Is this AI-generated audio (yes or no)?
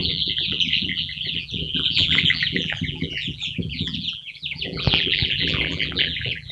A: yes